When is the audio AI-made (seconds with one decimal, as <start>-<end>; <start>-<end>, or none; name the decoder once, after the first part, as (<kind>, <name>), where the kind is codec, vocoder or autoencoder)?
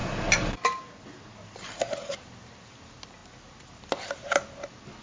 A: none